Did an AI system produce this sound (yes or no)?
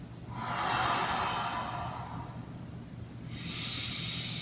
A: no